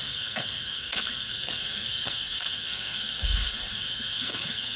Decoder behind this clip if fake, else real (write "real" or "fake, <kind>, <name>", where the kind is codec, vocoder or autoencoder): fake, codec, SNAC